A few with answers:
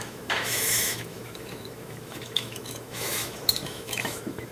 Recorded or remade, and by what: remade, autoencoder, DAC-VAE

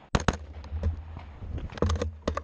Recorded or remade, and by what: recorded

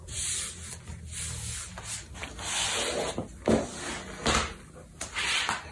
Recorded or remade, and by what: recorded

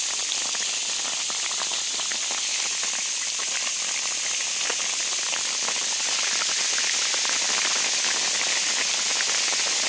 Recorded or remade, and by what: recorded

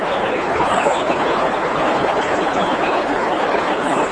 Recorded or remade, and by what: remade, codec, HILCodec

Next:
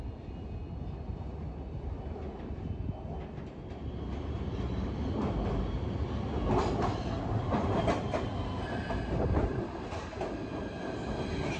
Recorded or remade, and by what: recorded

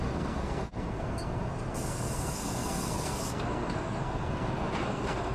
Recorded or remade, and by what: remade, codec, SNAC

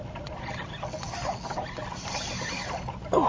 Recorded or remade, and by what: recorded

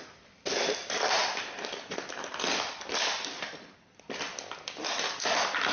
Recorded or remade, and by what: remade, vocoder, BigVGAN v2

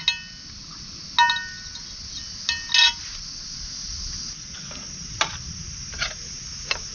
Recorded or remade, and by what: recorded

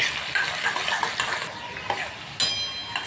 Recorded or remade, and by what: recorded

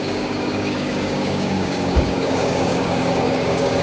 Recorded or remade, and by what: remade, codec, DAC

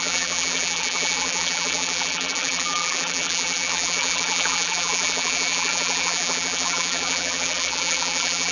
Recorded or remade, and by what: remade, vocoder, BigVGAN v2